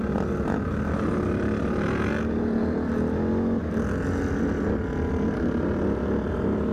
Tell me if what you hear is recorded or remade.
recorded